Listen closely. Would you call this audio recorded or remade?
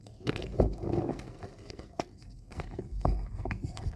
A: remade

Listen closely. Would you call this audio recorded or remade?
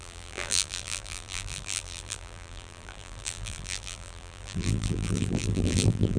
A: remade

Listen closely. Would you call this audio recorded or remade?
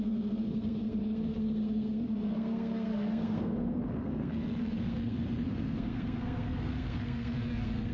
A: remade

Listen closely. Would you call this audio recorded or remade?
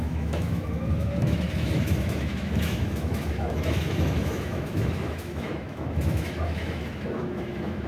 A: remade